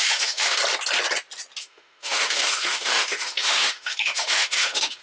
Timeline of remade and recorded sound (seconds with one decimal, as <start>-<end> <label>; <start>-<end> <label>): 0.0-0.6 remade; 0.6-1.6 recorded; 1.6-5.0 remade